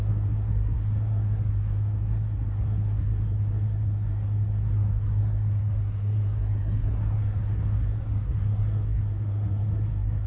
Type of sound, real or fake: fake